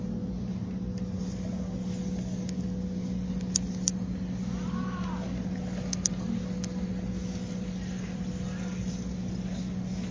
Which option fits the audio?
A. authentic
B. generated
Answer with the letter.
A